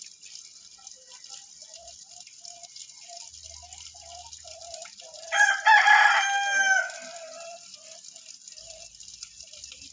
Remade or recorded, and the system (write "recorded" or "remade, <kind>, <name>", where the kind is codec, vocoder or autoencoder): recorded